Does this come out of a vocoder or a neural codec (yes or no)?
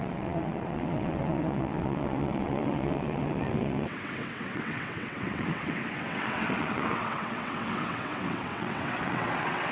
yes